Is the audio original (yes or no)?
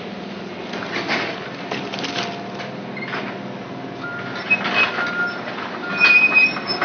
yes